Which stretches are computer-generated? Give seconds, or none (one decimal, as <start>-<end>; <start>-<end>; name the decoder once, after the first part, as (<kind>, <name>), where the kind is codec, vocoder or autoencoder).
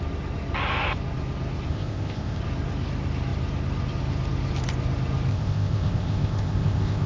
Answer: 1.7-2.4 (codec, ZipCodec); 5.3-7.1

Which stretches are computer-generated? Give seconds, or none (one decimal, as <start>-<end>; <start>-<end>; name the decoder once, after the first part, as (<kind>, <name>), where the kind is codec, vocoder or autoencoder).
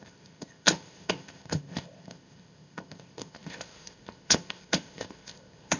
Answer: 0.0-5.8 (codec, ZipCodec)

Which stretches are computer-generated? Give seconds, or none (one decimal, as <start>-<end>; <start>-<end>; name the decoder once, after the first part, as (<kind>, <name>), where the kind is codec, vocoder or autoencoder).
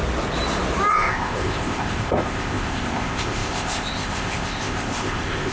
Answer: 0.9-5.5 (codec, ZipCodec)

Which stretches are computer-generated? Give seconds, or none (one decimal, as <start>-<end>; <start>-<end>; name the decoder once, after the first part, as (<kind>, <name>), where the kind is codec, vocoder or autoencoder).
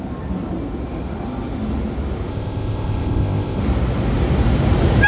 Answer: 2.3-3.6 (codec, ZipCodec)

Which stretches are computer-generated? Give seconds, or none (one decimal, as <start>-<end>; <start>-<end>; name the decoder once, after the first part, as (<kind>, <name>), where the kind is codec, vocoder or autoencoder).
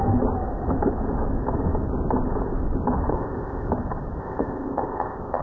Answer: 3.1-3.7 (codec, ZipCodec); 4.2-5.4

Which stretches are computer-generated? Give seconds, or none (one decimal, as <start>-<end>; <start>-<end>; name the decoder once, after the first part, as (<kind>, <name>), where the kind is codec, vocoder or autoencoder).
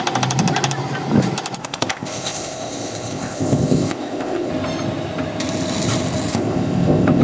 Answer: 1.6-4.5 (codec, ZipCodec); 6.3-7.2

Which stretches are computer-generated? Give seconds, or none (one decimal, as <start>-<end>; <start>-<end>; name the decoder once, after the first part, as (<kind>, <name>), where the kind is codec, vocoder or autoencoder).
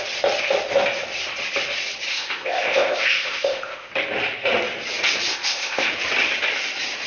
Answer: 2.1-3.9 (codec, ZipCodec); 5.3-5.9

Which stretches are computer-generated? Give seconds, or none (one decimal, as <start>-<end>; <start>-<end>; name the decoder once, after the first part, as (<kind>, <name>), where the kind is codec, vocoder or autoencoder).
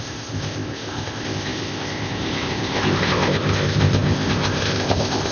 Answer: 0.0-5.3 (codec, ZipCodec)